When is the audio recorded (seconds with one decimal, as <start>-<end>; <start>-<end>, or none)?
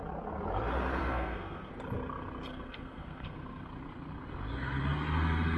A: 0.0-1.0; 1.7-2.5; 3.7-5.6